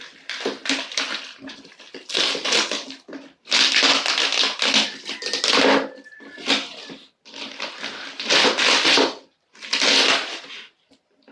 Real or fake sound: real